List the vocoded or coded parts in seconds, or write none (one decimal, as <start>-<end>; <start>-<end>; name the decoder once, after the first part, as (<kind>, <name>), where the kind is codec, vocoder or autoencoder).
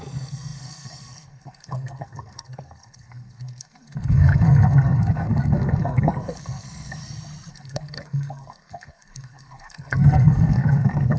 0.0-7.0 (codec, SNAC); 7.5-11.2